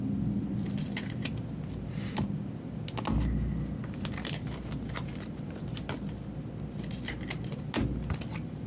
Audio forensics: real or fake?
real